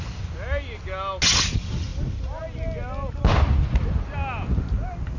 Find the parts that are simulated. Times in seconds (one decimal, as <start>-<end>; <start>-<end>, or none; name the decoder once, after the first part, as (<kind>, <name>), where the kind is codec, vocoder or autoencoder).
none